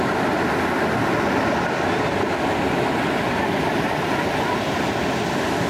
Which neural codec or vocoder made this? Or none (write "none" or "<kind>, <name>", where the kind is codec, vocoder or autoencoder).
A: none